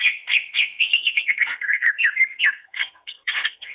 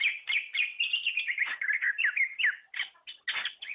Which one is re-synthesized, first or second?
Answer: first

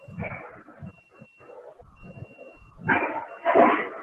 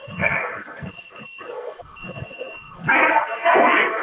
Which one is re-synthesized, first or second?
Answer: second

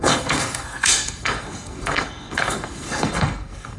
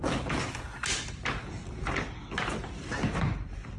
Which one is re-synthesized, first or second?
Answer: first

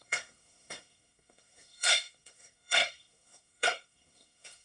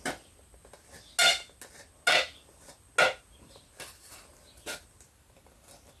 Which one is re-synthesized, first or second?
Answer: first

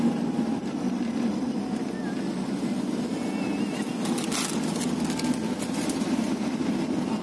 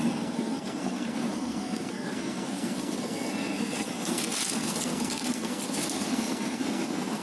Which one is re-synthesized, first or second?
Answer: second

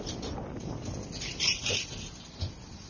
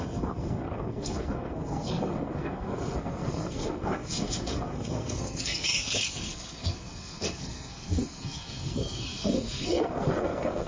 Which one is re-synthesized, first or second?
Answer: second